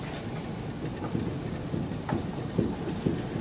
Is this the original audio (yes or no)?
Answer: yes